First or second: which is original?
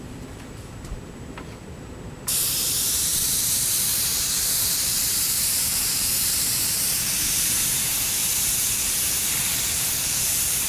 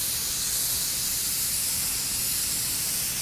second